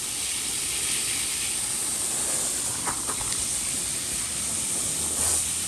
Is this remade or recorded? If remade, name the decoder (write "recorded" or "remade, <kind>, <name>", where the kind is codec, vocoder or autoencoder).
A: recorded